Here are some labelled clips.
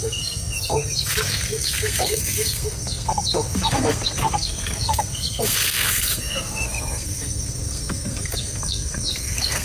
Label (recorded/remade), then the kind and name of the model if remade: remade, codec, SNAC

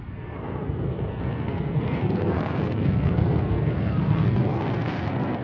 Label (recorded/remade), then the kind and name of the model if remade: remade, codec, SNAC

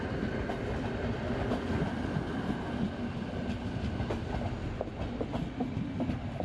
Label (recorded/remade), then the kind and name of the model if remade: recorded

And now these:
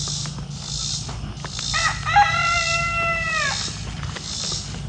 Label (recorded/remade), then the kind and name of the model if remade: recorded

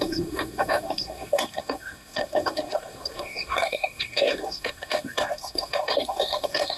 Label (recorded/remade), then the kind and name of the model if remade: remade, codec, SNAC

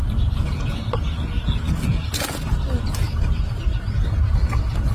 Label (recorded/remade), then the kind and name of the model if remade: recorded